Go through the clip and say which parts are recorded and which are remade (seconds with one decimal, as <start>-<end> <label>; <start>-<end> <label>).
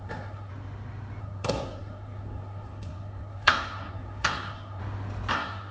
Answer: 0.0-0.5 remade; 0.5-1.2 recorded; 1.2-4.8 remade; 4.8-5.3 recorded; 5.3-5.7 remade